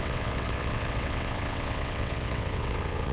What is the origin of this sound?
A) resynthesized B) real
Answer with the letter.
A